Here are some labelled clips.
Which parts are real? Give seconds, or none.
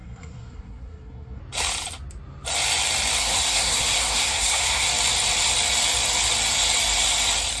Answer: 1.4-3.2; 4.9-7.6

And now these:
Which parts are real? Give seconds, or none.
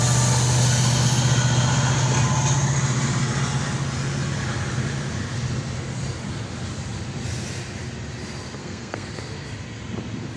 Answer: 0.0-8.6; 9.1-10.4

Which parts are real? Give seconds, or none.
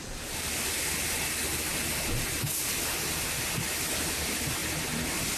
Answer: 0.0-5.4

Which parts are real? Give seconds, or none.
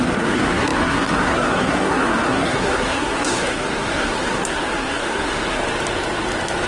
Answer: 5.6-6.7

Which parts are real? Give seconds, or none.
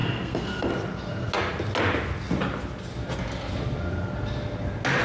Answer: 0.7-5.0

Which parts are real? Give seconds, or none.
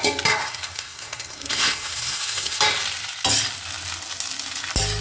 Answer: 0.0-0.4; 2.6-5.0